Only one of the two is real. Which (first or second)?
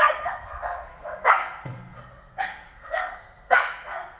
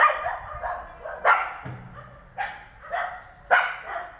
second